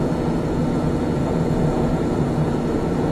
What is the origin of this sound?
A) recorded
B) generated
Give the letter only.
B